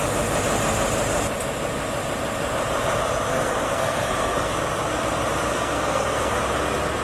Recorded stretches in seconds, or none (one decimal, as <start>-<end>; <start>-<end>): 0.0-3.3; 4.5-5.5; 6.4-7.0